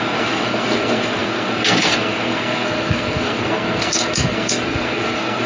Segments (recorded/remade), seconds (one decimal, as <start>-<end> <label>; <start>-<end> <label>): 0.0-5.5 remade